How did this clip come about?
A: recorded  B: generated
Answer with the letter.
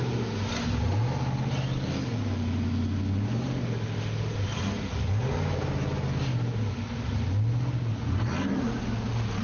A